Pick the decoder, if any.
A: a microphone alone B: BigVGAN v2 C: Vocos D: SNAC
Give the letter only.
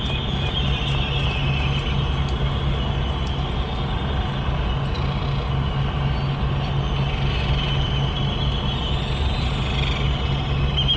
A